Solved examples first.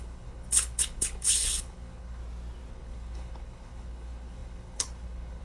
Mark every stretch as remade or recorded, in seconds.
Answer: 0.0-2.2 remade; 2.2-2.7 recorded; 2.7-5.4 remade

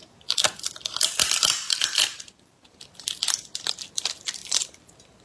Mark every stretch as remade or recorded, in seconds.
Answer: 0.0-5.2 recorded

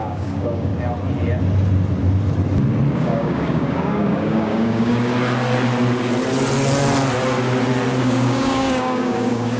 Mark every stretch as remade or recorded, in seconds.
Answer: 0.0-0.7 remade; 0.7-2.9 recorded; 2.9-5.1 remade; 5.1-8.0 recorded; 8.0-9.6 remade

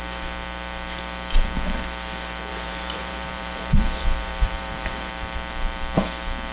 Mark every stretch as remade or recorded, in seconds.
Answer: 0.0-2.5 recorded; 2.5-5.1 remade; 5.1-6.5 recorded

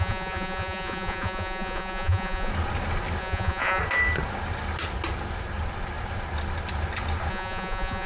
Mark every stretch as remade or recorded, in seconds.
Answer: 0.0-2.5 remade; 2.5-3.2 recorded; 3.2-3.8 remade; 3.8-7.3 recorded; 7.3-8.1 remade

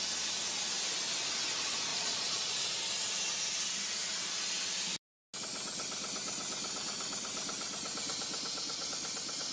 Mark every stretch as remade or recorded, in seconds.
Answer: 0.0-1.9 recorded; 1.9-2.7 remade; 2.7-9.5 recorded

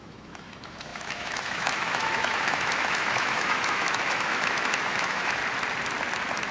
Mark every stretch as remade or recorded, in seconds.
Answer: 0.0-5.4 remade; 5.4-6.5 recorded

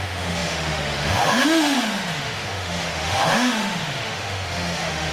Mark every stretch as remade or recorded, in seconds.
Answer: 0.0-5.1 remade